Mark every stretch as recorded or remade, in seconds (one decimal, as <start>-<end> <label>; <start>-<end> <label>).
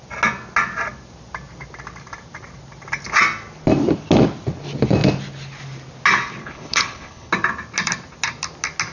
0.0-6.4 recorded; 6.4-7.3 remade; 7.3-8.9 recorded